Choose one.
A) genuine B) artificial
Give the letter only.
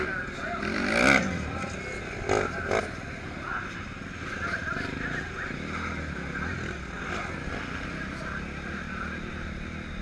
A